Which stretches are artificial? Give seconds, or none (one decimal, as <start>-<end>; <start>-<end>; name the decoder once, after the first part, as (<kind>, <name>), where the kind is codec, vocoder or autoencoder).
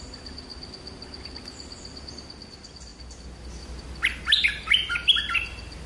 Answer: none